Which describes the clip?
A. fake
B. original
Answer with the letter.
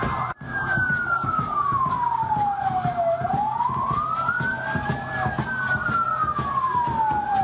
B